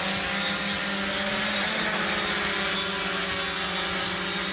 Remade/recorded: recorded